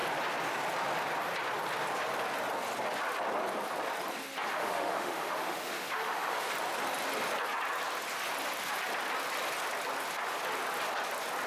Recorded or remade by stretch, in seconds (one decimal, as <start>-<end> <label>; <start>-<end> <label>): 0.0-4.5 recorded; 4.5-6.5 remade; 6.5-11.5 recorded